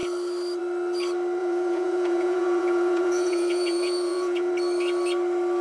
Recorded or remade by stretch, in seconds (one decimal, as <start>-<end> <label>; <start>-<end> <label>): 0.0-1.4 recorded; 1.4-4.5 remade; 4.5-5.6 recorded